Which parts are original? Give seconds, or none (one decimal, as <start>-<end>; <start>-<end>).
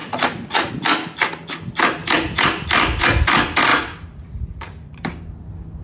0.7-3.7; 5.1-5.8